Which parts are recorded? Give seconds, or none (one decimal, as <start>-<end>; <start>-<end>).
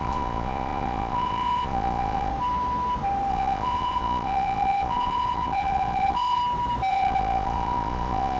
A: 2.3-3.3; 6.4-6.9